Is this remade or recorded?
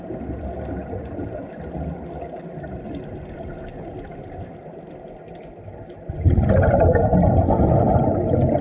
recorded